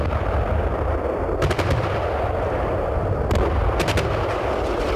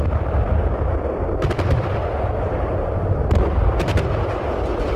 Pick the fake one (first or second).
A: second